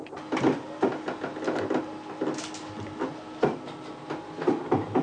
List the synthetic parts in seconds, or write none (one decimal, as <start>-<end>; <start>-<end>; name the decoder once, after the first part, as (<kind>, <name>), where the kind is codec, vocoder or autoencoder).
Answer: none